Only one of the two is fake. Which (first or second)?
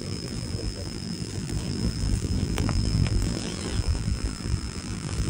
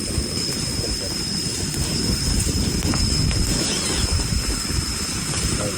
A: first